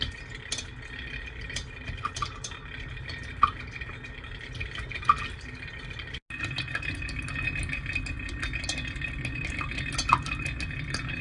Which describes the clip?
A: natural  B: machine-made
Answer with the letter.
A